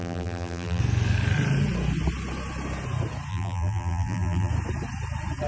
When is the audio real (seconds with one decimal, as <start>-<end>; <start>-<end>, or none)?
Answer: 0.8-3.3; 4.5-5.5